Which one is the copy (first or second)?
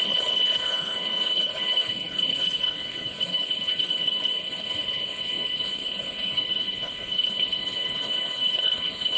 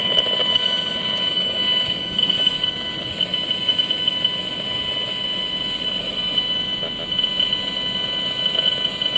first